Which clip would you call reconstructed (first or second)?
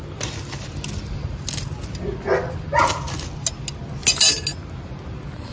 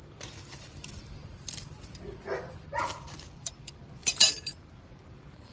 second